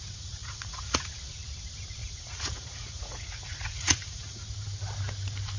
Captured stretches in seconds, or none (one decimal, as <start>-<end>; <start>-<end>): 0.0-0.4; 1.0-2.0; 4.4-5.6